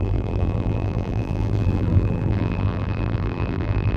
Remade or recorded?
remade